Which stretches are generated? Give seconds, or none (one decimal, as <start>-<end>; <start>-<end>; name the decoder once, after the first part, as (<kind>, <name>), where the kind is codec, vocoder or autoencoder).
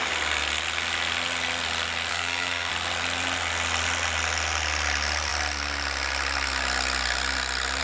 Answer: 2.1-2.7 (codec, SNAC)